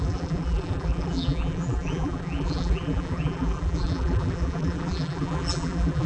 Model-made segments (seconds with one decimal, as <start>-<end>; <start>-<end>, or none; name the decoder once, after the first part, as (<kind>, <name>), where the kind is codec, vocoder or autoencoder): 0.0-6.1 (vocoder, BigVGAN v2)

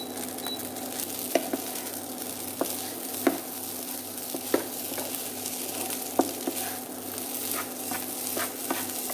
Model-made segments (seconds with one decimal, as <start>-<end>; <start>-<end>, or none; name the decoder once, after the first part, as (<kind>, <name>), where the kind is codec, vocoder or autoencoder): none

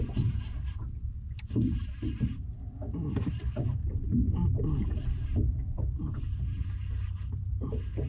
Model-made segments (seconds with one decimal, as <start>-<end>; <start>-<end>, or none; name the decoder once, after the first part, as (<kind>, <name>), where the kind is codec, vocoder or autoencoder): none

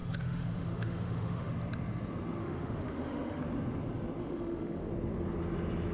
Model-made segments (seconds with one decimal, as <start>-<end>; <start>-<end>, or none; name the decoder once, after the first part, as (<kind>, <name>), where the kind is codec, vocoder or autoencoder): 0.0-1.5 (autoencoder, DAC-VAE); 2.4-3.4; 4.2-4.9

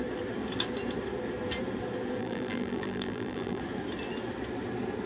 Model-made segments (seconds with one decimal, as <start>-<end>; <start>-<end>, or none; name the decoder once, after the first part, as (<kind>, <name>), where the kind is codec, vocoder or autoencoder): 2.2-3.6 (vocoder, BigVGAN v2)